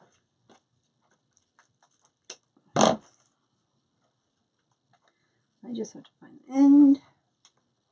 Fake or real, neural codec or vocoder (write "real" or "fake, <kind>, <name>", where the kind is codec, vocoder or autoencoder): real